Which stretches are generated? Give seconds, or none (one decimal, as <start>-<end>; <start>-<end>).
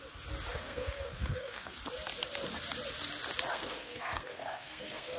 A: 0.5-1.8; 3.5-5.2